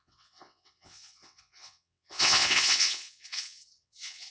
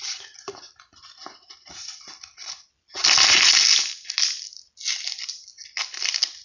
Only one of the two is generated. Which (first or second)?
first